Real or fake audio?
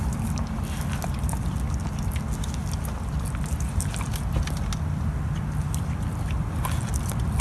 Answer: real